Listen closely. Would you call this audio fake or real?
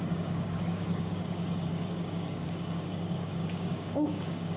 fake